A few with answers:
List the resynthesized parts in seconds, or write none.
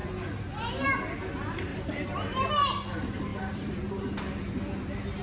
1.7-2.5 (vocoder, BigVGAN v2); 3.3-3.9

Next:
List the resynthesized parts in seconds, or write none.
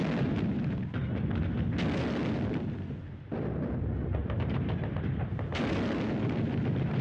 4.2-5.6 (vocoder, BigVGAN v2)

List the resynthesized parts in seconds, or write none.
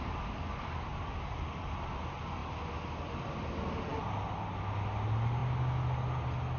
none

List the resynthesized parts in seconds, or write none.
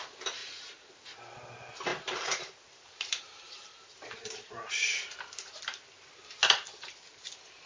0.4-0.9 (vocoder, BigVGAN v2); 1.9-4.7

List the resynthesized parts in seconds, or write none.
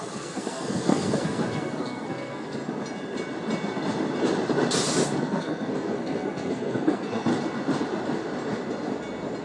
0.0-2.6 (codec, SNAC); 5.2-7.3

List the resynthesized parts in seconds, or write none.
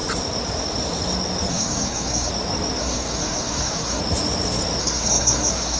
1.5-2.3 (codec, SNAC); 2.8-4.0; 4.8-5.8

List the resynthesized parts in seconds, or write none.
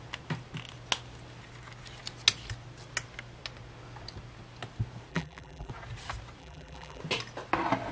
5.1-5.7 (vocoder, BigVGAN v2); 6.4-7.0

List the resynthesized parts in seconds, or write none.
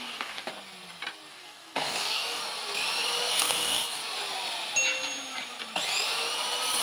0.0-0.5 (codec, DAC); 1.3-2.4; 3.3-4.0